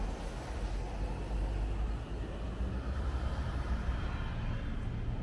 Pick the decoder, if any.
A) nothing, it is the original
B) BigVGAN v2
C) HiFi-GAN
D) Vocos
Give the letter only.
A